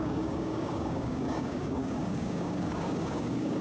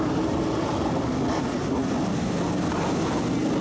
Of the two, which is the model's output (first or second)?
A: first